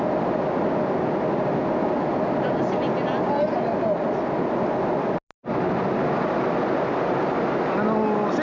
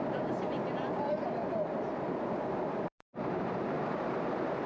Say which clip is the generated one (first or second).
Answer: second